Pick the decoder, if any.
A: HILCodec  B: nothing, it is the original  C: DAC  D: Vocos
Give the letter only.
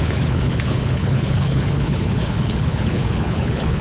A